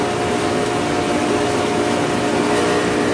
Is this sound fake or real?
real